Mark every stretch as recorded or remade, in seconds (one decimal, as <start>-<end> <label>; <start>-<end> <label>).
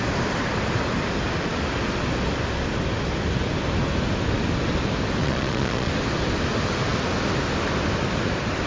0.0-5.2 recorded; 5.2-5.9 remade; 5.9-8.7 recorded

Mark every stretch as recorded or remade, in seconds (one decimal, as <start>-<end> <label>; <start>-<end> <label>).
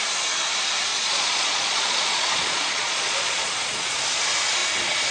0.0-0.9 recorded; 0.9-4.0 remade; 4.0-5.1 recorded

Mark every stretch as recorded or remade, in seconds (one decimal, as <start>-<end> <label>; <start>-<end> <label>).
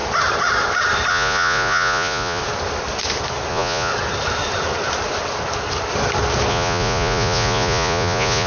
0.0-1.1 recorded; 1.1-2.4 remade; 2.4-3.5 recorded; 3.5-3.9 remade; 3.9-6.5 recorded; 6.5-8.5 remade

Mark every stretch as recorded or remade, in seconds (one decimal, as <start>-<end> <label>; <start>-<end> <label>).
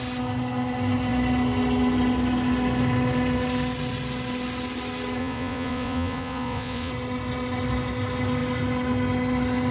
0.0-5.2 recorded; 5.2-6.9 remade; 6.9-9.7 recorded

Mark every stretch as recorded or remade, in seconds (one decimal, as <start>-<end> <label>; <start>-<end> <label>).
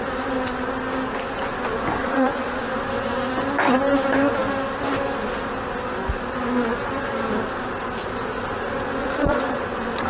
0.0-2.0 recorded; 2.0-2.6 remade; 2.6-9.0 recorded; 9.0-9.6 remade; 9.6-10.1 recorded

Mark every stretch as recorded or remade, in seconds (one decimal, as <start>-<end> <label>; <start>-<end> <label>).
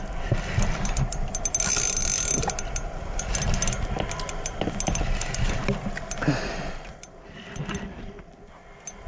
0.0-9.1 recorded